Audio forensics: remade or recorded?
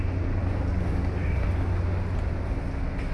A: recorded